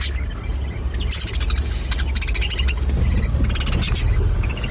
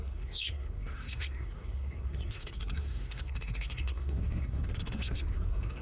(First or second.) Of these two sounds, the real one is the first